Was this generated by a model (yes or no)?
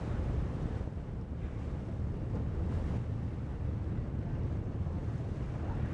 no